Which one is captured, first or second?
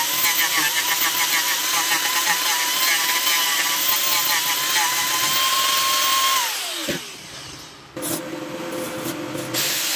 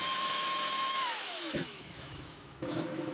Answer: first